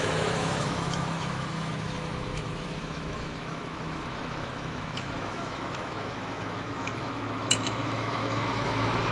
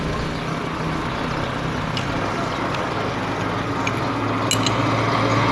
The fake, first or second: first